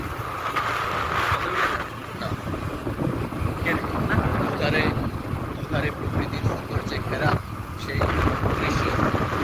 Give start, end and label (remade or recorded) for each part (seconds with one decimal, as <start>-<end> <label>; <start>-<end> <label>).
0.0-9.4 recorded